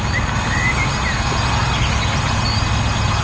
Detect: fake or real real